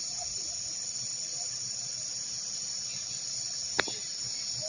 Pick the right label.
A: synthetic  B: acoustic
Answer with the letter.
B